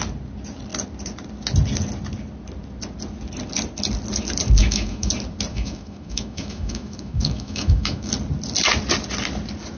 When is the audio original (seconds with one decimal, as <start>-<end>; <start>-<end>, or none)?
0.0-4.6; 5.1-5.5; 8.1-9.8